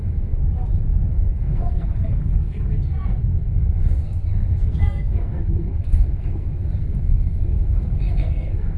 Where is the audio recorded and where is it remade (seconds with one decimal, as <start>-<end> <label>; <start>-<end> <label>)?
0.0-0.4 remade; 0.4-1.1 recorded; 1.1-8.8 remade